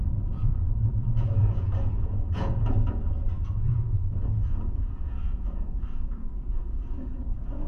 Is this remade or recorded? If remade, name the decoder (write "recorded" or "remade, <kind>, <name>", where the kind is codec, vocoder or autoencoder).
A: remade, vocoder, Vocos